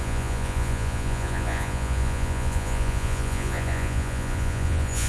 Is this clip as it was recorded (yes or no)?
no